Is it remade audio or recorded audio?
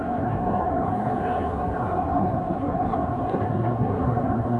remade